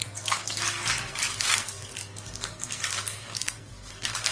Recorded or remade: remade